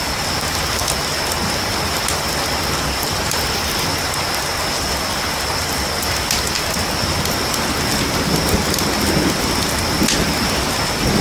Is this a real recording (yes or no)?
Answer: yes